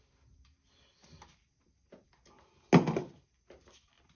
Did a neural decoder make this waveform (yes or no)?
no